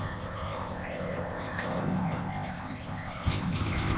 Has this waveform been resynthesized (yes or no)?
yes